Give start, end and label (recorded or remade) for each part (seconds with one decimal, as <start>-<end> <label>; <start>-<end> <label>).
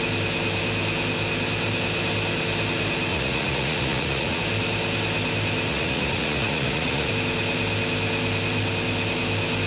0.0-3.1 recorded; 3.1-4.4 remade; 4.4-5.7 recorded; 5.7-7.1 remade; 7.1-9.7 recorded